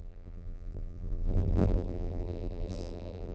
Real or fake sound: fake